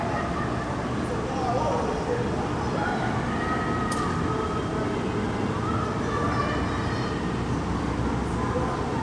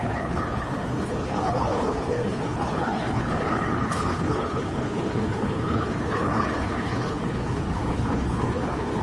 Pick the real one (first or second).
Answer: first